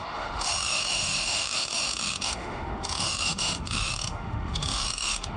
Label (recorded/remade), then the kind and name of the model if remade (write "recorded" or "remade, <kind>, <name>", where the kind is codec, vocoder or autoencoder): remade, autoencoder, DAC-VAE